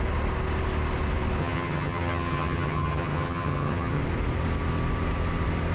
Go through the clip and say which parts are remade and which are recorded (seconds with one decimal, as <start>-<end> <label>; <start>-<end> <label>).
0.0-1.4 recorded; 1.4-4.0 remade; 4.0-5.7 recorded